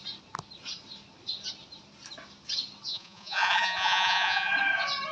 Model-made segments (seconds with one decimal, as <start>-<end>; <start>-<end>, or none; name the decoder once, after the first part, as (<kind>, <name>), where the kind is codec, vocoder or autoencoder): 2.9-4.5 (vocoder, Vocos)